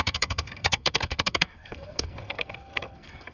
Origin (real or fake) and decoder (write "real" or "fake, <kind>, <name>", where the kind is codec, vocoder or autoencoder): fake, codec, SNAC